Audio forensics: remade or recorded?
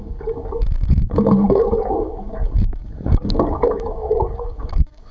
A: remade